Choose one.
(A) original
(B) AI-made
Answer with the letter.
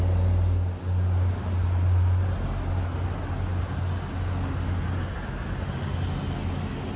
A